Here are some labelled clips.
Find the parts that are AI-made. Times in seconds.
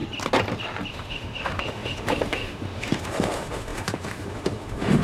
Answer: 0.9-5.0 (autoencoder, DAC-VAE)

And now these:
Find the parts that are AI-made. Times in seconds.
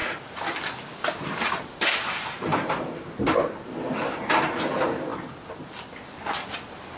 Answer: none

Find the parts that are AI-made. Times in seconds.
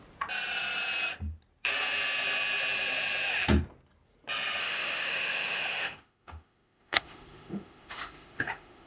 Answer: 4.6-8.9 (autoencoder, DAC-VAE)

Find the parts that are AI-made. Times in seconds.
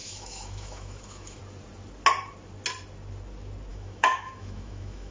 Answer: 0.0-1.4 (autoencoder, DAC-VAE); 3.7-5.1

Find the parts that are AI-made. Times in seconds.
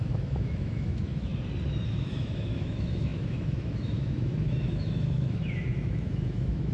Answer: 0.0-1.3 (autoencoder, DAC-VAE); 1.9-6.7